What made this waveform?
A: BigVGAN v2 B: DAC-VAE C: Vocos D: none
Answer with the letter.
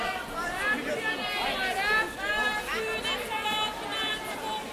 D